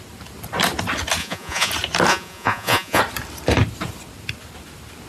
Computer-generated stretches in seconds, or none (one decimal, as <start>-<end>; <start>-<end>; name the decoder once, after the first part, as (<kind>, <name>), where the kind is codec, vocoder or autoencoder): 1.2-1.7 (vocoder, Vocos); 2.1-3.0